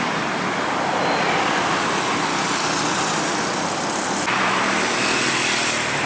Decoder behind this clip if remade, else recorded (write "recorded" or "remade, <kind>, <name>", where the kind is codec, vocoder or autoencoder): recorded